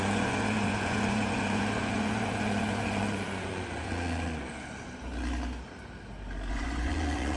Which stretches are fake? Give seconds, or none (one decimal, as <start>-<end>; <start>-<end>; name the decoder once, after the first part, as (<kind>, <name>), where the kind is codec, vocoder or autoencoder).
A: 0.0-5.1 (vocoder, Vocos); 6.5-7.4